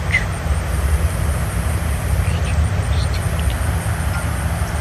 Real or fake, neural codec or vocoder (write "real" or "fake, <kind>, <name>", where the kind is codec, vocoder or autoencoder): real